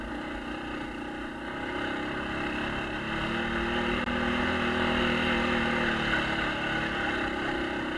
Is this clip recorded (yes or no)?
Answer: yes